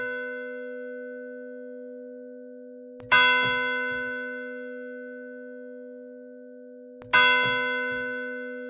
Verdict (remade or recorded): recorded